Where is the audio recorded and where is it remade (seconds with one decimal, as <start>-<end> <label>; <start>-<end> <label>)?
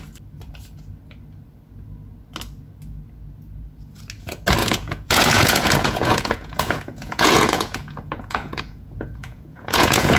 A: 0.0-4.6 recorded; 4.6-10.2 remade